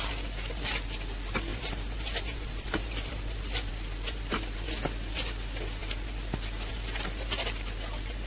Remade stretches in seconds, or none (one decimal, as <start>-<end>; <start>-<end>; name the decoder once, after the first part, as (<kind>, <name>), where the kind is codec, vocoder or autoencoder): 1.5-3.7 (vocoder, BigVGAN v2)